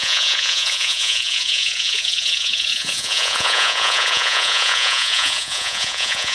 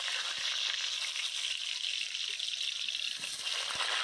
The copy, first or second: first